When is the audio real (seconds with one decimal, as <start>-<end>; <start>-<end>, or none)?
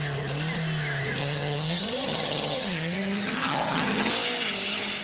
0.0-1.2; 4.1-5.0